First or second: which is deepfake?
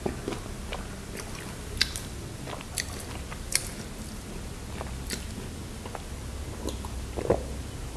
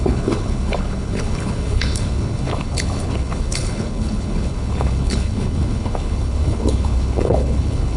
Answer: second